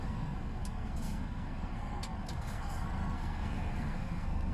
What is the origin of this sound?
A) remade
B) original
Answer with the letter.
A